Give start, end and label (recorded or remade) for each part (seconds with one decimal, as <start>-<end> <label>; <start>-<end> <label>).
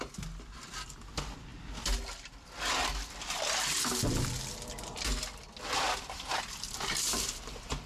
0.0-7.9 recorded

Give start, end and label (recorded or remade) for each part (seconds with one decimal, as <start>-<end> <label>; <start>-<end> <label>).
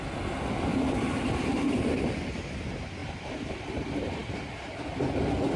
0.0-0.7 recorded; 0.7-2.3 remade; 2.3-3.0 recorded; 3.0-3.7 remade; 3.7-5.6 recorded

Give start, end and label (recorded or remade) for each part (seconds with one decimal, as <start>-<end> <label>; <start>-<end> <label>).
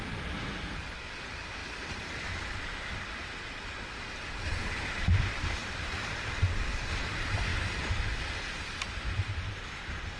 0.0-1.6 recorded; 1.6-6.4 remade; 6.4-10.2 recorded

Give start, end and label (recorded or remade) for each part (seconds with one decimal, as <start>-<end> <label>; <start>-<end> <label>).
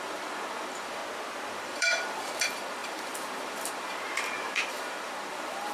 0.0-1.0 remade; 1.0-1.5 recorded; 1.5-5.7 remade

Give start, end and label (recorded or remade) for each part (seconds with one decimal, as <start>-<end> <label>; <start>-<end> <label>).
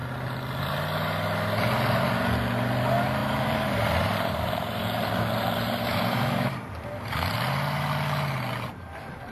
0.0-3.2 recorded; 3.2-6.7 remade; 6.7-8.7 recorded; 8.7-9.3 remade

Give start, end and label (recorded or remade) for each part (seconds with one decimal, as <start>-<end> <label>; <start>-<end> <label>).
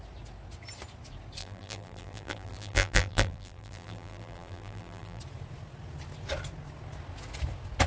0.0-1.4 recorded; 1.4-5.2 remade; 5.2-7.9 recorded